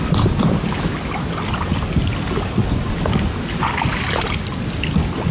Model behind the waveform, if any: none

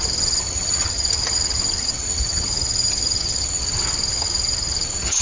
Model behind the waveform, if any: vocoder, HiFi-GAN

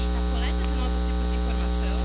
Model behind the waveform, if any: none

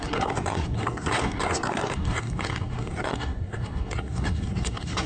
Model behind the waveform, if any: codec, SNAC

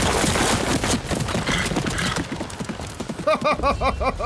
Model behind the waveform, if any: none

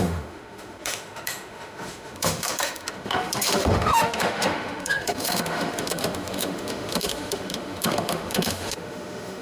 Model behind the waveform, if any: autoencoder, DAC-VAE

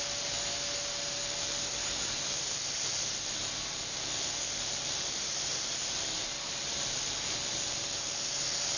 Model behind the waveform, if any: none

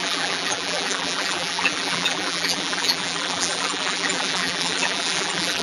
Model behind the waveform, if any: vocoder, BigVGAN v2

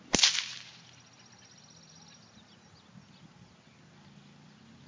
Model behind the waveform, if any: none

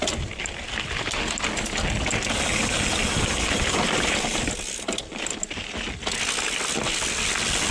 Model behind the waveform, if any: none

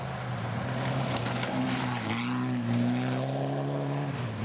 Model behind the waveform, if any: none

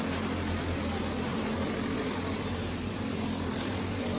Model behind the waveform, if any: none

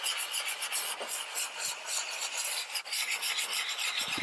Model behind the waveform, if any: none